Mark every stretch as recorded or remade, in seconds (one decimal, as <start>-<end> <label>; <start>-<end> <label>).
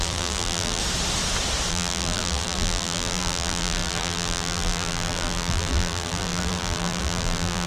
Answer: 0.0-0.8 remade; 0.8-1.7 recorded; 1.7-7.7 remade